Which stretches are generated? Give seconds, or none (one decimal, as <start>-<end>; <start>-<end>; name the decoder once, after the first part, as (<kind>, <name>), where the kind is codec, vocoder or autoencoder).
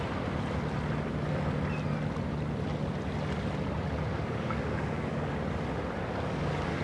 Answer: 4.1-5.3 (codec, DAC); 6.1-6.8